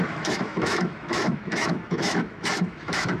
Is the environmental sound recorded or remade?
remade